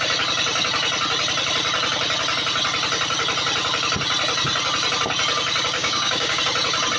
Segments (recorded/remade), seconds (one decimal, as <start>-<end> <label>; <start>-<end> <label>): 0.0-5.8 recorded; 5.8-6.4 remade; 6.4-7.0 recorded